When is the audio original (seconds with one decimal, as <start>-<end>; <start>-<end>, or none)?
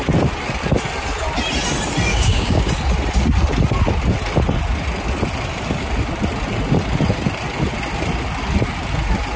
0.0-2.1; 2.7-9.4